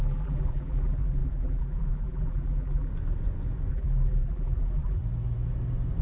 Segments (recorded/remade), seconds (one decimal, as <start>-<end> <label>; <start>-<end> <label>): 0.0-2.9 remade; 2.9-3.7 recorded; 3.7-5.0 remade; 5.0-6.0 recorded